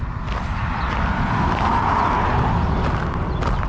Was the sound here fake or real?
real